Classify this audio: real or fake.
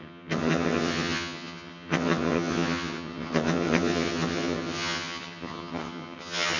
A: fake